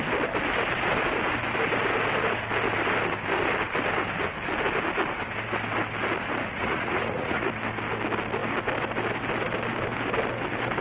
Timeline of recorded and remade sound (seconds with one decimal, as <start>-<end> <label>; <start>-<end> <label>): 0.0-6.5 recorded; 6.5-7.5 remade; 7.5-10.8 recorded